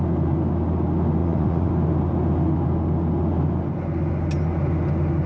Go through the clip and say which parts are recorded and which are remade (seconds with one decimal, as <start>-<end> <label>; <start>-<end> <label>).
0.0-1.2 recorded; 1.2-1.7 remade; 1.7-5.3 recorded